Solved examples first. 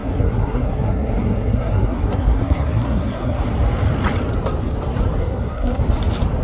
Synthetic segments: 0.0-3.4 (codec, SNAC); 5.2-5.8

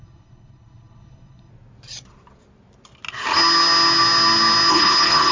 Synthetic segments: 0.0-1.5 (codec, HILCodec); 4.7-5.3

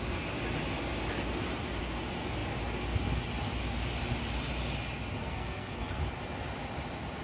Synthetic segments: 5.2-6.0 (codec, SNAC)

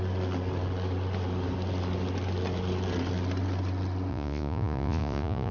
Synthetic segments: 4.1-5.5 (vocoder, Vocos)

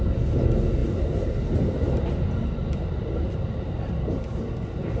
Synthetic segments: none

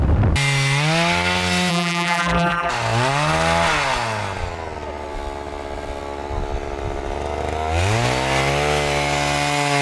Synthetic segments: 1.7-2.7 (vocoder, BigVGAN v2)

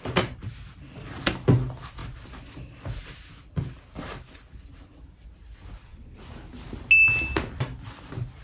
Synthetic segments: none